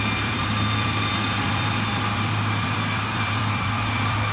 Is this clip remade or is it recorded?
remade